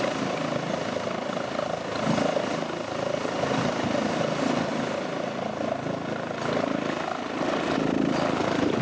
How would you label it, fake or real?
real